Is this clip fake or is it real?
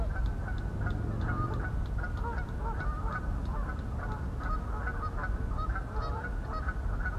real